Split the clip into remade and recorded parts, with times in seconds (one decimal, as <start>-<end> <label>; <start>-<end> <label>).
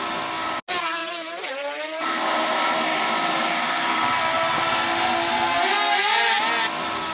0.0-1.0 recorded; 1.0-4.2 remade; 4.2-7.1 recorded